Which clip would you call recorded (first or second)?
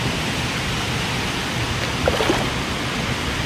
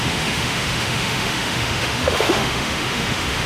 first